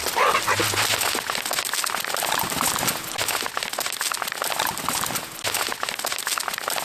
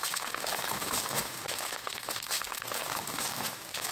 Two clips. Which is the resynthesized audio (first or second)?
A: second